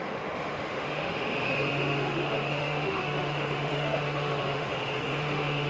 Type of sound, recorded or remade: remade